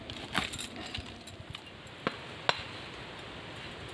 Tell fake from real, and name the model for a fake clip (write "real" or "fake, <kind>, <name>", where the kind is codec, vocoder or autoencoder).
real